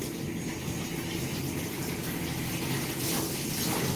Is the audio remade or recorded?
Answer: recorded